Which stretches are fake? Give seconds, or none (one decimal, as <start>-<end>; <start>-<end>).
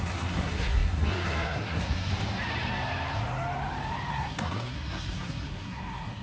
0.0-2.1; 4.1-6.2